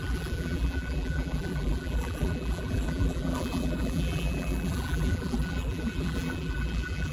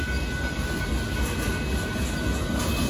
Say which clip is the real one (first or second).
second